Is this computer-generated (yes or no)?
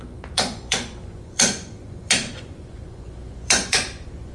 yes